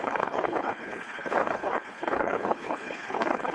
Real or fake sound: fake